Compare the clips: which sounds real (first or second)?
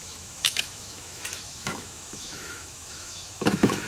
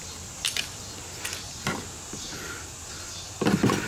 second